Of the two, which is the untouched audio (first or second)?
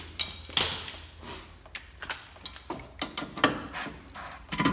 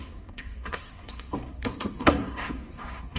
first